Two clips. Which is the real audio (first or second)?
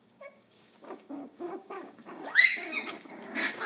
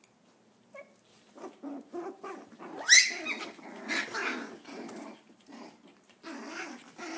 second